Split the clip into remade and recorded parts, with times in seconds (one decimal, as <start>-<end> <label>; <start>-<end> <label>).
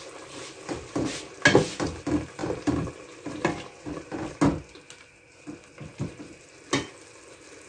0.0-2.4 recorded; 2.4-4.3 remade; 4.3-7.7 recorded